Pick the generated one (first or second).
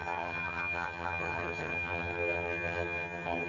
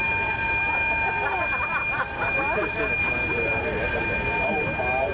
first